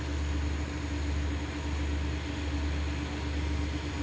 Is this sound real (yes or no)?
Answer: yes